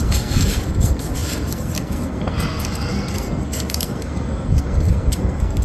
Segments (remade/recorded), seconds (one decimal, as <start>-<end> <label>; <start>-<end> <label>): 0.0-5.6 remade